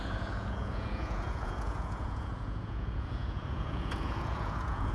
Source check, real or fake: fake